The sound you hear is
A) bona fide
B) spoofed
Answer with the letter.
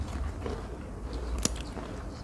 A